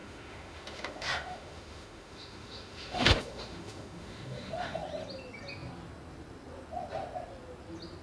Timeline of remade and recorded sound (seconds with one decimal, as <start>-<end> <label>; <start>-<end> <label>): 0.0-4.8 remade; 4.8-8.0 recorded